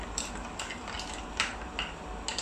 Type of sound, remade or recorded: recorded